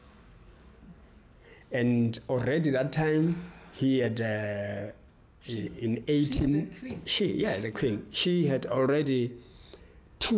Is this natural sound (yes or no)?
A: no